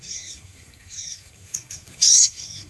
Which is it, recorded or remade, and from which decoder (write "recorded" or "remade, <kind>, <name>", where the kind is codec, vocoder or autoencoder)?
remade, codec, SNAC